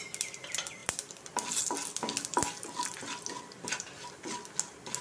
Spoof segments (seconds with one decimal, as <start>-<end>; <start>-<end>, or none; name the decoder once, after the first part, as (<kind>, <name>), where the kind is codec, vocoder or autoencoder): none